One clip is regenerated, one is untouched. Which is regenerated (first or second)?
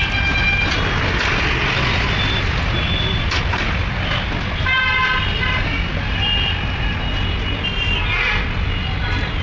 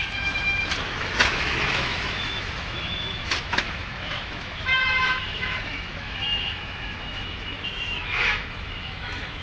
second